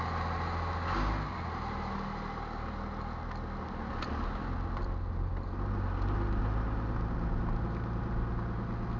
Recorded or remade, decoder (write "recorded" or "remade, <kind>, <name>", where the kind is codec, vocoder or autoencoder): recorded